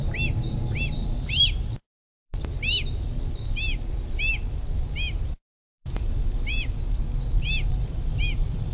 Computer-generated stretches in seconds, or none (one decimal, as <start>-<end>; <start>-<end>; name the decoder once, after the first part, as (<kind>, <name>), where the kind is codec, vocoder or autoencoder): 1.0-2.5 (vocoder, BigVGAN v2); 5.7-8.7